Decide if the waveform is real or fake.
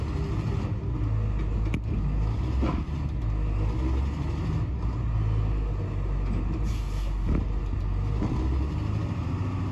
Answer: real